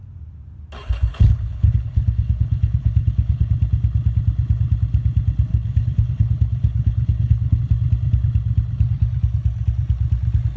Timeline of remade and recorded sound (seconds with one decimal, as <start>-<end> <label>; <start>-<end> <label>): 0.0-1.1 recorded; 1.1-3.5 remade; 3.5-5.5 recorded; 5.5-7.6 remade; 7.6-10.6 recorded